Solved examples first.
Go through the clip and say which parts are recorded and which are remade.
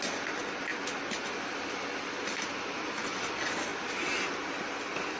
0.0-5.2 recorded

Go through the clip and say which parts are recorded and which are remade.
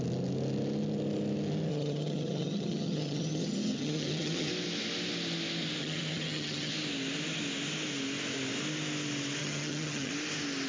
0.0-1.7 recorded; 1.7-4.5 remade; 4.5-5.8 recorded; 5.8-6.7 remade; 6.7-9.4 recorded; 9.4-10.1 remade; 10.1-10.7 recorded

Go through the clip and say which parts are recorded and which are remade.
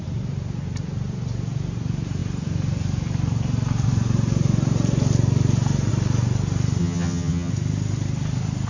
0.0-6.8 recorded; 6.8-7.5 remade; 7.5-8.7 recorded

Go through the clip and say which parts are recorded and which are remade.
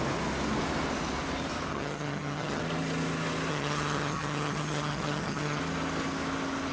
0.0-1.7 recorded; 1.7-2.6 remade; 2.6-3.5 recorded; 3.5-5.6 remade; 5.6-6.7 recorded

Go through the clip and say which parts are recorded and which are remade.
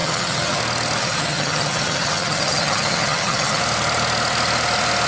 0.0-0.6 remade; 0.6-1.0 recorded; 1.0-3.6 remade; 3.6-5.1 recorded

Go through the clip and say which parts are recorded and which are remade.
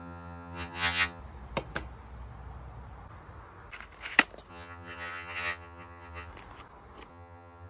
0.0-1.2 remade; 1.2-4.5 recorded; 4.5-6.3 remade; 6.3-7.1 recorded; 7.1-7.7 remade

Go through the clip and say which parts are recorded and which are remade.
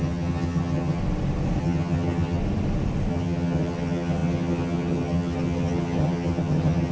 0.0-1.0 remade; 1.0-1.6 recorded; 1.6-2.4 remade; 2.4-3.1 recorded; 3.1-6.9 remade